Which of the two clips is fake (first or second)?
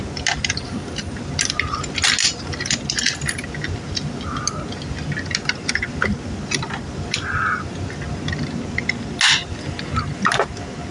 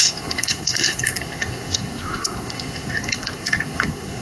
second